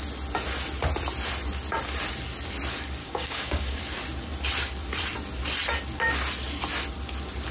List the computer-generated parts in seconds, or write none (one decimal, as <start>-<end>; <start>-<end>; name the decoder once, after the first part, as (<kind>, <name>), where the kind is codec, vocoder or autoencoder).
3.0-3.8 (codec, DAC)